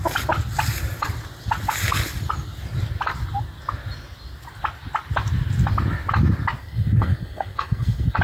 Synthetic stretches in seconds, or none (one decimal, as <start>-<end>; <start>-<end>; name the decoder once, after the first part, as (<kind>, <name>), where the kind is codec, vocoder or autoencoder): 6.6-8.2 (codec, SNAC)